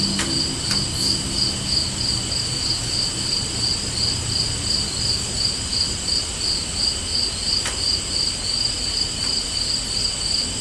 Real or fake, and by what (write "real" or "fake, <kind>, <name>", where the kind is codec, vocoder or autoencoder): real